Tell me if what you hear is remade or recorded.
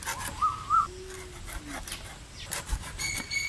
recorded